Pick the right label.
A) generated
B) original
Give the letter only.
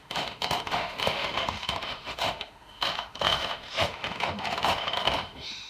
A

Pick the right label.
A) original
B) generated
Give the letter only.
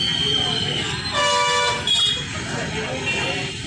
A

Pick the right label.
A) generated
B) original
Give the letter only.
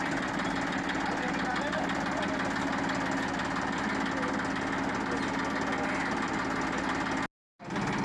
B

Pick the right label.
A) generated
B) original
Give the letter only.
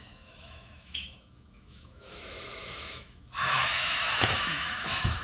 A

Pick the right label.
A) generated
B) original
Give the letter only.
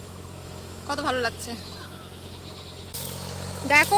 A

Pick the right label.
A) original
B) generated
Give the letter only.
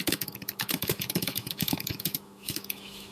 B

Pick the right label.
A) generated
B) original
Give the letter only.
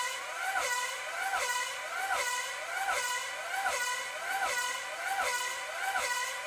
B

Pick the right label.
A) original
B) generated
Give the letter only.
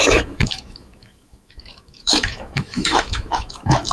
B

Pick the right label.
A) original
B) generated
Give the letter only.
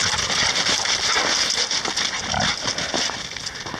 A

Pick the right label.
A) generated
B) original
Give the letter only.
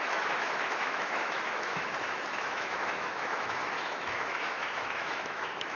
A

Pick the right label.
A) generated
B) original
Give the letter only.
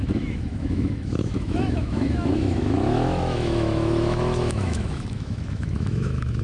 A